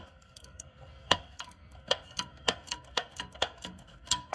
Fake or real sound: fake